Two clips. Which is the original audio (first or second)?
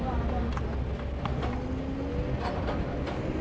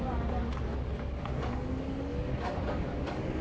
first